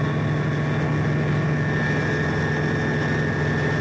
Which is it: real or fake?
real